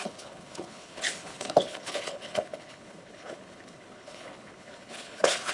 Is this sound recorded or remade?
remade